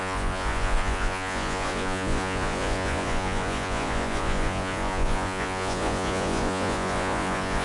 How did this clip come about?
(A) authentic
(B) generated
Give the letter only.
B